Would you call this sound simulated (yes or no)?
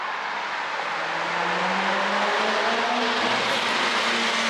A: no